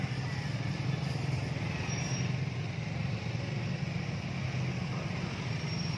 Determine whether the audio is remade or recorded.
recorded